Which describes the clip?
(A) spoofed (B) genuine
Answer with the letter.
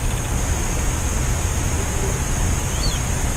B